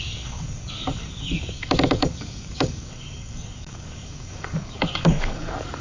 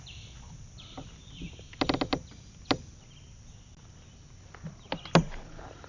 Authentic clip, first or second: second